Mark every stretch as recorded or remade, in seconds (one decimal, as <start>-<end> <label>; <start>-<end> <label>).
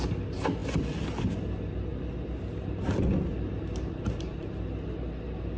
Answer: 0.0-5.6 recorded